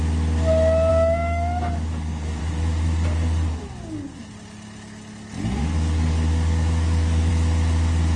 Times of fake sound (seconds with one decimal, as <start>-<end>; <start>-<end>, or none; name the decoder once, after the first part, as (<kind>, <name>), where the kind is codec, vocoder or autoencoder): 0.9-2.4 (codec, DAC); 5.6-7.3